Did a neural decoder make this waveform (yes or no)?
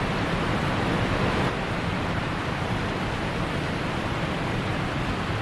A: yes